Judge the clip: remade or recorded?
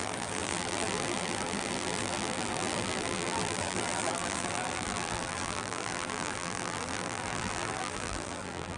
remade